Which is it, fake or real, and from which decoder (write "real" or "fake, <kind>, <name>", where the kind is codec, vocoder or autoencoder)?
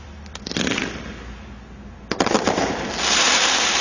real